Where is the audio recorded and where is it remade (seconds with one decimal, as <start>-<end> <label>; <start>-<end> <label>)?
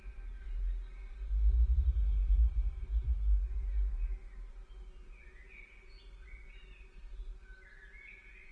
0.0-8.5 recorded